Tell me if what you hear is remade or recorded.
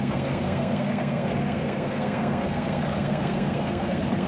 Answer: remade